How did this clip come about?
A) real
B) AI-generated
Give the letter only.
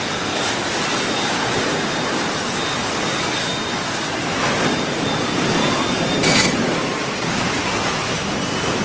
A